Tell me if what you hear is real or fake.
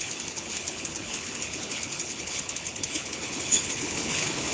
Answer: fake